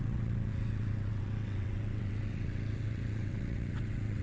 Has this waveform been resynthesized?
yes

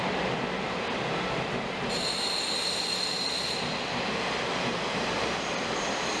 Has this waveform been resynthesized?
no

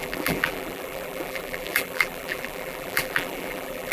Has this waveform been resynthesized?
yes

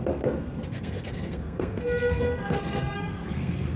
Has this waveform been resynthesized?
yes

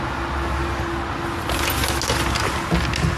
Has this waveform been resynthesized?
no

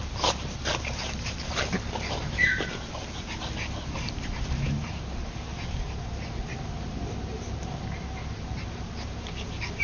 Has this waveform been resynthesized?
yes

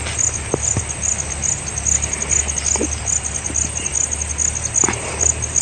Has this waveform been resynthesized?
no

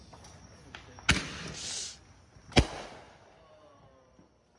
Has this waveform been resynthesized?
no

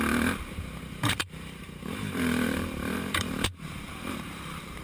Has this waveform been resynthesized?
yes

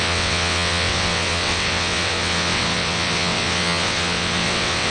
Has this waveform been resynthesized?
yes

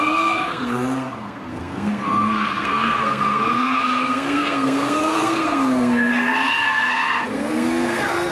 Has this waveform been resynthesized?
yes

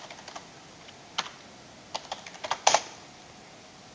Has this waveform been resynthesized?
no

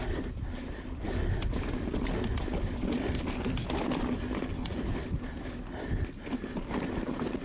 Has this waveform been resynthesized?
no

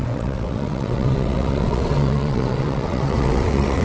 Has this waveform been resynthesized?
yes